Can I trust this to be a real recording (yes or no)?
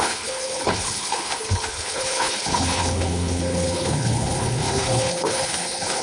no